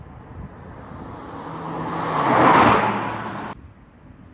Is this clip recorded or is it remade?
recorded